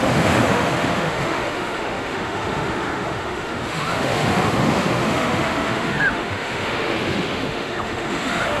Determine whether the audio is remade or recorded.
remade